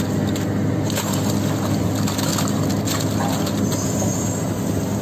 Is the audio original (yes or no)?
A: yes